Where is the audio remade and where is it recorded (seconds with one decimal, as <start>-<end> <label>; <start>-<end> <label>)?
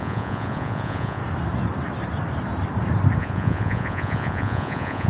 0.0-1.2 remade; 1.2-3.2 recorded; 3.2-5.1 remade